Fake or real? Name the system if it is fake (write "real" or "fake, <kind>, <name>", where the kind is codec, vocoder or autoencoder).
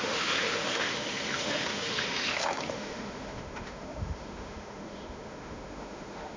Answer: fake, autoencoder, DAC-VAE